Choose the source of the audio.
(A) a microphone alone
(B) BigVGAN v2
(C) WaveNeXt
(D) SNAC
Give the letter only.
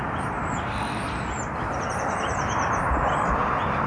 A